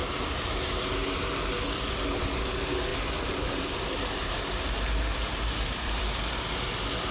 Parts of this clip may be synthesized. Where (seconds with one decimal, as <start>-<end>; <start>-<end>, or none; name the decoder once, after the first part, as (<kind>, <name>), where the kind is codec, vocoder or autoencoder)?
0.0-1.3 (vocoder, BigVGAN v2); 2.9-6.0